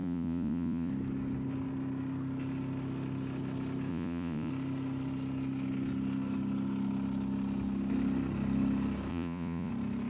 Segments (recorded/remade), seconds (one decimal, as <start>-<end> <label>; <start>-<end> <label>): 0.0-0.9 remade; 0.9-3.9 recorded; 3.9-4.5 remade; 4.5-9.1 recorded; 9.1-9.7 remade; 9.7-10.1 recorded